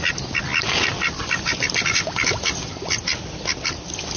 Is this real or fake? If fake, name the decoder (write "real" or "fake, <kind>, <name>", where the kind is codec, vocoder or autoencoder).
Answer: real